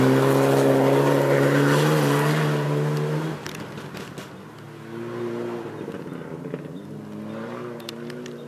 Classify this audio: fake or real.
real